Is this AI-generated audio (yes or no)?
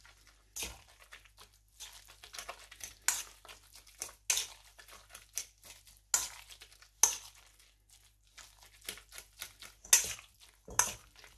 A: no